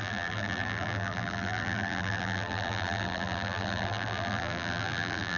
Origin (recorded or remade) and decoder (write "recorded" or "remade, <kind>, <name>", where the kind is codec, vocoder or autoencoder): remade, vocoder, BigVGAN v2